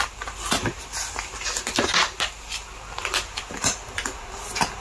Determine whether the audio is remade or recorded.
recorded